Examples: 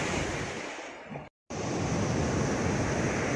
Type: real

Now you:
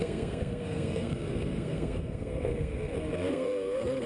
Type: fake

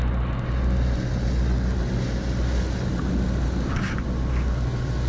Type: real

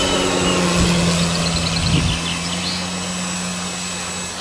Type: real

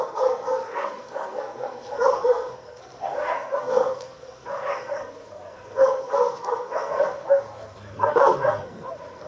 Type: fake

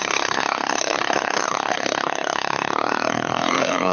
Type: fake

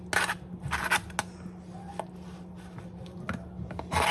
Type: real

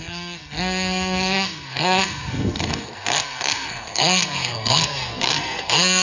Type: fake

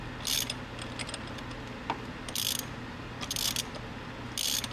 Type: real